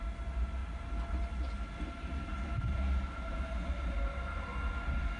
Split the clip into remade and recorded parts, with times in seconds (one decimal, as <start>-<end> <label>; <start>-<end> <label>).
0.0-5.2 recorded